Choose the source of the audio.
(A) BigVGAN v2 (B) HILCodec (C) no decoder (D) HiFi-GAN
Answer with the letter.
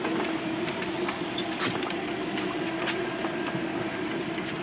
C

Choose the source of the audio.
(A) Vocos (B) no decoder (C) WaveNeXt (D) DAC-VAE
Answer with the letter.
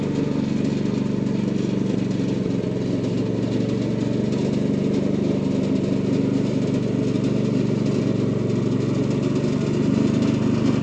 B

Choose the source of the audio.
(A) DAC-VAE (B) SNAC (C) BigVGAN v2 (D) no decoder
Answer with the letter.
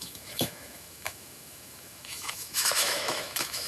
A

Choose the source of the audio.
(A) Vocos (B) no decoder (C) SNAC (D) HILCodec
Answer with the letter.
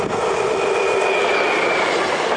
B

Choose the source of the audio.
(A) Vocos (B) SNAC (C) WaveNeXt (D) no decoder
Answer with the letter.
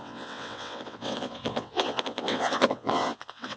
C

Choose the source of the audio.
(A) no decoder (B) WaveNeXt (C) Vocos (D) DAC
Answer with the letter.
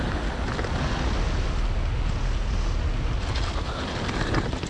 A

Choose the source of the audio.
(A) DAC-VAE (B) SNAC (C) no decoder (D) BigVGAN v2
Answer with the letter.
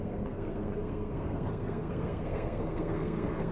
B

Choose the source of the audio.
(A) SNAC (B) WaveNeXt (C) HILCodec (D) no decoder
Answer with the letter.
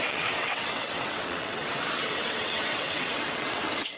B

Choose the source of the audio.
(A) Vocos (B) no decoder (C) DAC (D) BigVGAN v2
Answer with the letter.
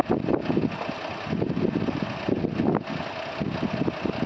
B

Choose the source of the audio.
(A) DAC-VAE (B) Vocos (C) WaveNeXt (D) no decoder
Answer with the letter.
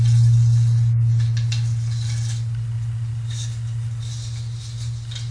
D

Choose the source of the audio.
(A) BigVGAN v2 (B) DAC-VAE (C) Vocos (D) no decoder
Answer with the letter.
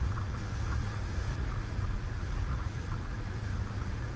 C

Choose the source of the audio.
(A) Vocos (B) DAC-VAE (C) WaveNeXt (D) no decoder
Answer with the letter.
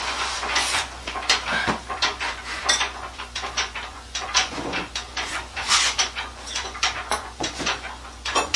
A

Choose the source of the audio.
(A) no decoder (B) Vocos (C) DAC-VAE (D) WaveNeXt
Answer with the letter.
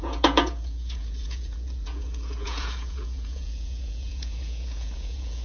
B